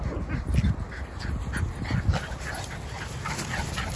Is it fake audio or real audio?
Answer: real